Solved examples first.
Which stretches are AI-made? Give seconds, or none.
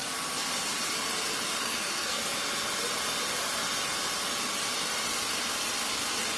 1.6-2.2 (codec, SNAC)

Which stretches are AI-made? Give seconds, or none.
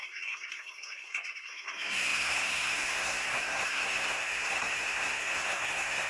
0.0-6.1 (codec, SNAC)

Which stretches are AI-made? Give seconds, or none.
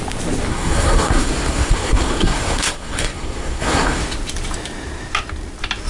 0.5-4.0 (codec, SNAC)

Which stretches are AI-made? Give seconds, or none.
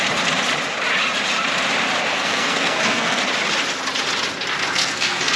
2.1-3.2 (codec, SNAC); 4.6-5.4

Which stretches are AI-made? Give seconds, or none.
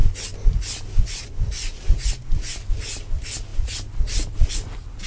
none